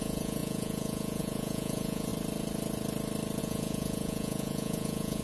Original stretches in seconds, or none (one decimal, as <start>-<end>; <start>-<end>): 2.1-3.4